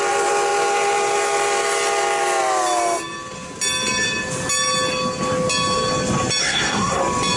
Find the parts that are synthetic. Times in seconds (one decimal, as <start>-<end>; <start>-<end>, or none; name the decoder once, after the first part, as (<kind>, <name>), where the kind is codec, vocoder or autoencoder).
6.4-7.0 (codec, SNAC)